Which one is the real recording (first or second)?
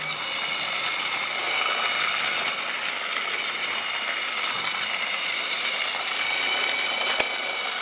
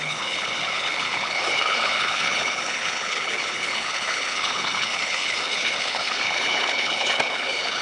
first